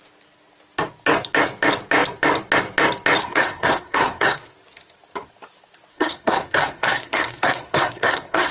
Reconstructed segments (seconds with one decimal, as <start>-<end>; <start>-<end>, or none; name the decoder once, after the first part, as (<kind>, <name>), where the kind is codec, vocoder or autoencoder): 3.2-4.5 (codec, SNAC); 5.9-8.5